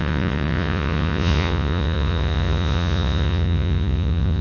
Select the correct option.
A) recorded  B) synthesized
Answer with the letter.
B